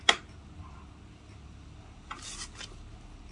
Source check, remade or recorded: recorded